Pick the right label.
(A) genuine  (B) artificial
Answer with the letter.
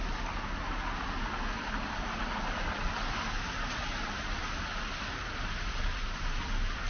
A